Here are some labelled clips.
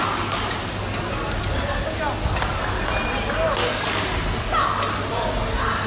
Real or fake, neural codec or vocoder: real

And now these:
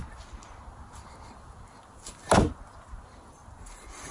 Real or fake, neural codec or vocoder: real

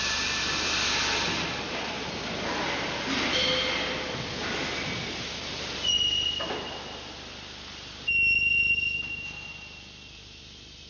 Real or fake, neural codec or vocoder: real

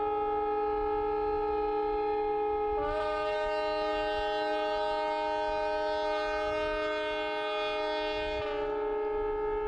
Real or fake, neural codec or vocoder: real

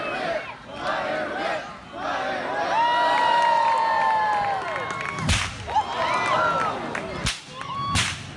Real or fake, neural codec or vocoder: real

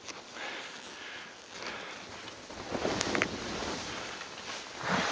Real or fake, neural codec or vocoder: real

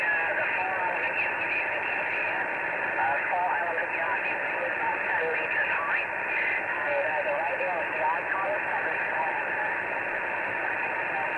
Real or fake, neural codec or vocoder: fake, vocoder, BigVGAN v2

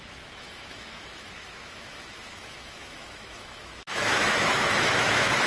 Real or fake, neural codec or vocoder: fake, autoencoder, DAC-VAE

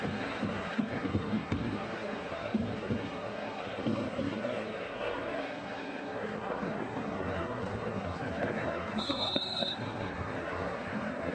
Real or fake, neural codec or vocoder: fake, codec, SNAC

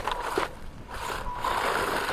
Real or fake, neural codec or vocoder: real